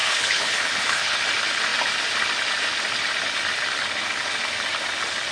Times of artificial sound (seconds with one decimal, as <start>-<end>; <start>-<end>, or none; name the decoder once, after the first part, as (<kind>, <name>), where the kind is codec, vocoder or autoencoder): 0.0-1.2 (codec, HILCodec)